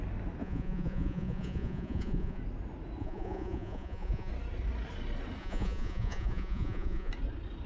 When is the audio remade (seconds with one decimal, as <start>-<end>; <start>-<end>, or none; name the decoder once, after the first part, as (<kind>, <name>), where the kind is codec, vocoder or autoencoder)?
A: 0.4-2.4 (vocoder, Vocos); 3.0-4.3; 5.4-7.1